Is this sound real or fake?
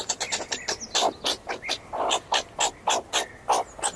real